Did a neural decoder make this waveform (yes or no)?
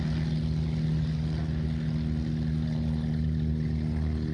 no